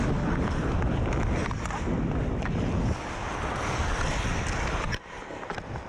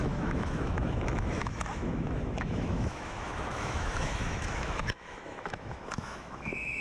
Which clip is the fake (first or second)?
second